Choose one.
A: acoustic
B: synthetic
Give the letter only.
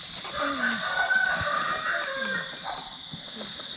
A